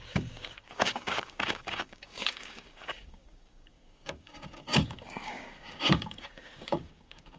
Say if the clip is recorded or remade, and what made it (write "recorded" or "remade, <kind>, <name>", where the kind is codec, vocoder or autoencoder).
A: remade, codec, DAC